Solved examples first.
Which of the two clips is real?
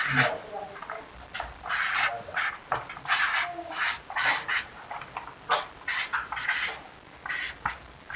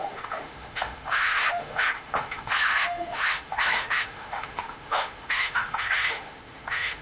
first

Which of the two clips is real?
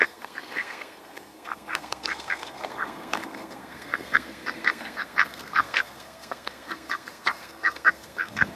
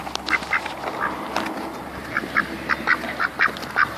second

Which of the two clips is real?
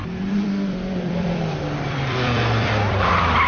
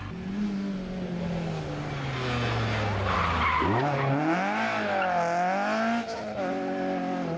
second